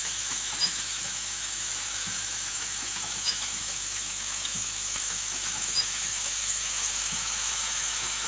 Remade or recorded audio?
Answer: remade